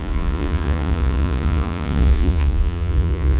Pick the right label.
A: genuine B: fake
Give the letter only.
B